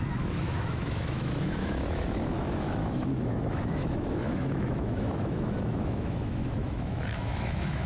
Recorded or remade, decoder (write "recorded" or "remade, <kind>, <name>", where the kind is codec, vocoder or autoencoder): remade, autoencoder, DAC-VAE